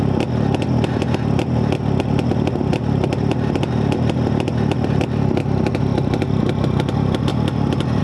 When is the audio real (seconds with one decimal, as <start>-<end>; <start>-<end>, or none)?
0.0-5.9; 6.4-8.0